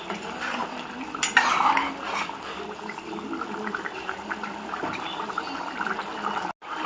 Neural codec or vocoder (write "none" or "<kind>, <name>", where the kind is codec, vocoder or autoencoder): none